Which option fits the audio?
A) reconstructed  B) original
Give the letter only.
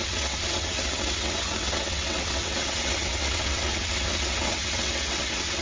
A